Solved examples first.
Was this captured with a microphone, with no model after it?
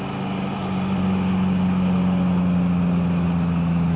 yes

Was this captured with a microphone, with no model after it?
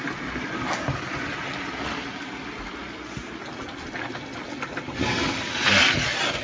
yes